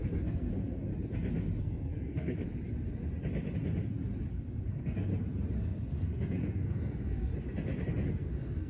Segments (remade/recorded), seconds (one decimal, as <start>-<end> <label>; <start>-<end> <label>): 0.0-0.9 remade; 0.9-1.6 recorded; 1.6-2.5 remade; 2.5-4.3 recorded; 4.3-5.1 remade; 5.1-5.6 recorded; 5.6-7.3 remade; 7.3-8.1 recorded; 8.1-8.7 remade